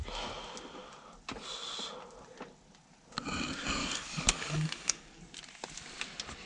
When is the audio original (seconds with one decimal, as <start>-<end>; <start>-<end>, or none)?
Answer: 0.0-3.8; 5.2-6.5